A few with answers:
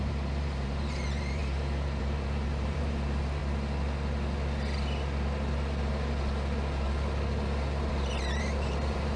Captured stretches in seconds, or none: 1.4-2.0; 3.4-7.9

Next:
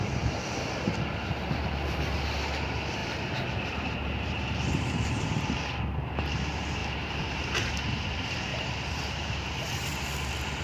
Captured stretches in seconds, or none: 0.0-3.0; 5.2-6.8; 7.7-8.5; 10.0-10.6

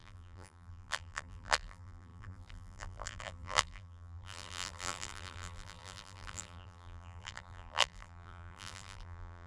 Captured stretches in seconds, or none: none